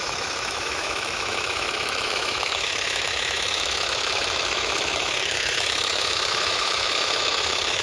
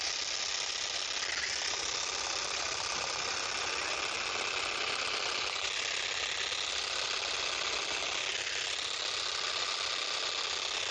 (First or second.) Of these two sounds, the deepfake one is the first